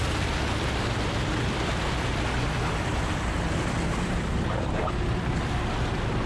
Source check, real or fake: real